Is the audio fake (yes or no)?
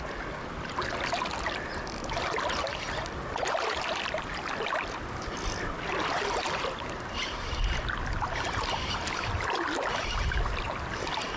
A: no